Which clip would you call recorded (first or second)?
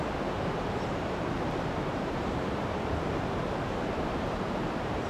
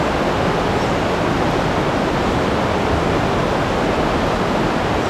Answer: second